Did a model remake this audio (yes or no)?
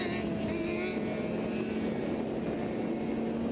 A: no